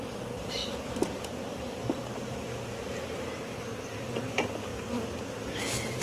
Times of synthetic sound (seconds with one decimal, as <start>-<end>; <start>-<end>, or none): 0.0-3.7; 4.2-4.7